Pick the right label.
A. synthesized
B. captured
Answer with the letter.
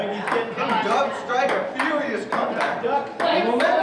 B